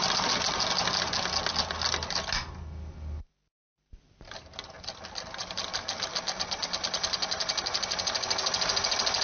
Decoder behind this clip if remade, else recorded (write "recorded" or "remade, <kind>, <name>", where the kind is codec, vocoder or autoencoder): recorded